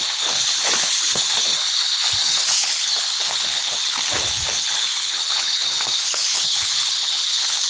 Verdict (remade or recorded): remade